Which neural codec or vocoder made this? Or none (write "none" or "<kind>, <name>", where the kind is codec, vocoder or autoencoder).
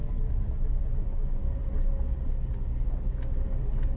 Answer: none